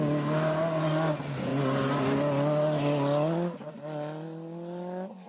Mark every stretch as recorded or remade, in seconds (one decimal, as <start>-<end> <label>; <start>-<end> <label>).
0.0-5.3 recorded